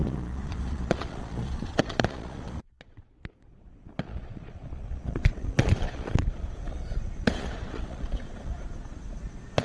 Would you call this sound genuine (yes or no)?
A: no